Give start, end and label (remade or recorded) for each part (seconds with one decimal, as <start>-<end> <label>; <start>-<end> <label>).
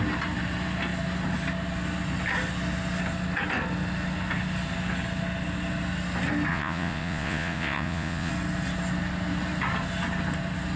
0.0-6.5 recorded; 6.5-8.3 remade; 8.3-10.8 recorded